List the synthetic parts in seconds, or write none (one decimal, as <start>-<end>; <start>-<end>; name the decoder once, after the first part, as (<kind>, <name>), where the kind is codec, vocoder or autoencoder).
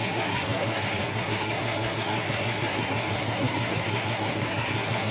0.0-5.1 (codec, SNAC)